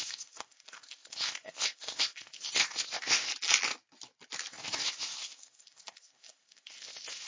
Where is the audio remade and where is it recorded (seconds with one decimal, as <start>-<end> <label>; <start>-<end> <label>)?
0.0-3.3 remade; 3.3-4.5 recorded; 4.5-7.3 remade